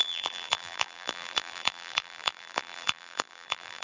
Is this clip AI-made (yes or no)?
yes